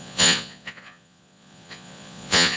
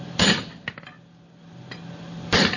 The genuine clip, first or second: second